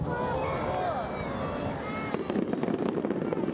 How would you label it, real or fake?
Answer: real